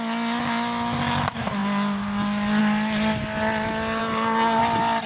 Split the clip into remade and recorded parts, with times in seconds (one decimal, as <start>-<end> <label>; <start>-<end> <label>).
0.0-4.0 recorded; 4.0-4.6 remade; 4.6-5.1 recorded